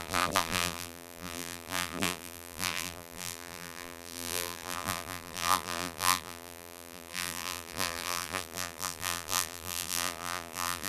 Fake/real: fake